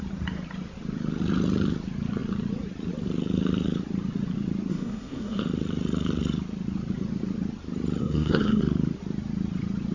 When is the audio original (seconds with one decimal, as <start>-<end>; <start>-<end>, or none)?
0.0-4.7; 5.4-8.0; 8.6-9.9